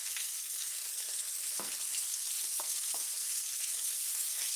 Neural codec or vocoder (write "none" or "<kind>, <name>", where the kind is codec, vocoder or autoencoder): codec, SNAC